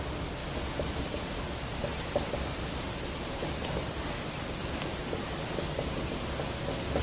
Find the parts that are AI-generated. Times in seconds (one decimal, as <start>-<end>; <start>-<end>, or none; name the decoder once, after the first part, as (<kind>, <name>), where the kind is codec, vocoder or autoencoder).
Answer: 1.9-4.0 (vocoder, BigVGAN v2); 4.6-5.1